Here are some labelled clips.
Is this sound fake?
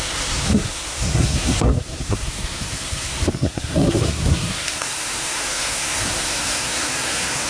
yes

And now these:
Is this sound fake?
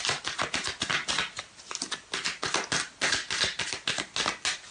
no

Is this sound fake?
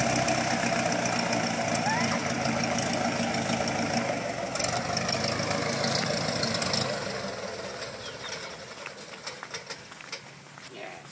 no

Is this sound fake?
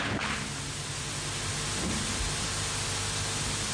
no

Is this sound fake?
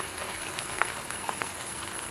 yes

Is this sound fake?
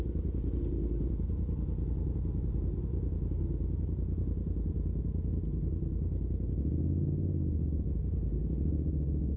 no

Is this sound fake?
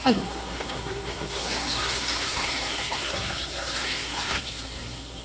yes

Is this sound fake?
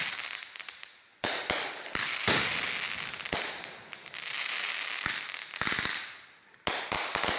no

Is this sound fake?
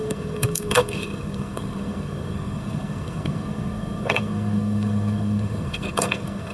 yes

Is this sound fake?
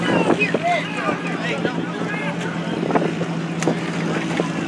no